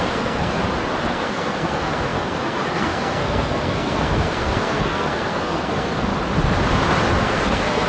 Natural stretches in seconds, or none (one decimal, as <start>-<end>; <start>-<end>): 0.6-1.1; 6.1-7.2